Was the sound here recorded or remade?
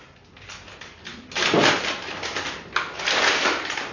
recorded